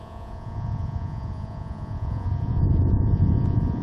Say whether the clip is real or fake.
fake